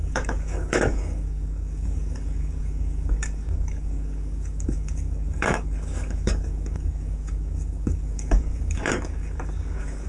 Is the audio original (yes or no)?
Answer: no